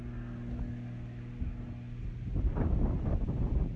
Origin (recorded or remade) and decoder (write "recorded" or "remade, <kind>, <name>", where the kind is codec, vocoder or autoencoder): recorded